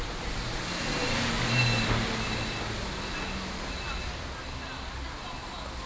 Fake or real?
real